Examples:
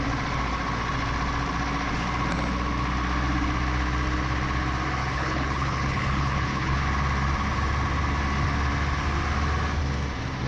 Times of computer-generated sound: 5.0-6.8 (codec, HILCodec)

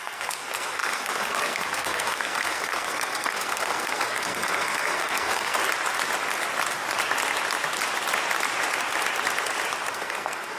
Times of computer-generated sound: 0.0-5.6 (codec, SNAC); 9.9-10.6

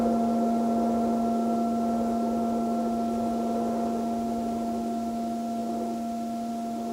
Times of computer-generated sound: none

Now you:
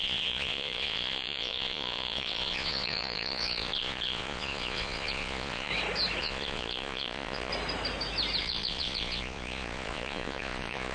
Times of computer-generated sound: 0.0-5.7 (vocoder, Vocos); 6.2-7.5; 8.4-10.9